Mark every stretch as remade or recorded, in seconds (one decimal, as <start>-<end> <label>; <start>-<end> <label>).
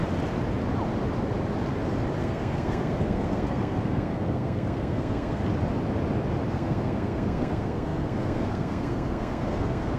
0.0-2.2 recorded; 2.2-5.4 remade; 5.4-6.5 recorded; 6.5-10.0 remade